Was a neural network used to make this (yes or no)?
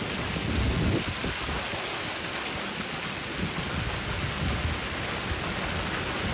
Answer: no